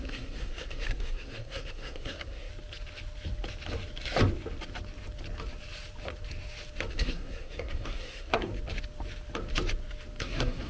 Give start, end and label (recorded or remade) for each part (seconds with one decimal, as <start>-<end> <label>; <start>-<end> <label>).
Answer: 0.0-2.5 remade; 2.5-6.9 recorded; 6.9-8.5 remade; 8.5-10.2 recorded; 10.2-10.7 remade